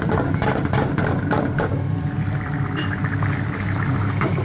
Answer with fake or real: fake